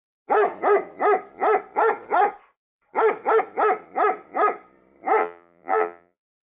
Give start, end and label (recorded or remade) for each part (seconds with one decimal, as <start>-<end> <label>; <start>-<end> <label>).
0.0-5.2 recorded; 5.2-6.4 remade